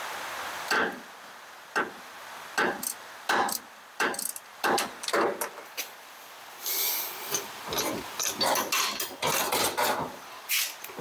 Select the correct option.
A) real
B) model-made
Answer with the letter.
A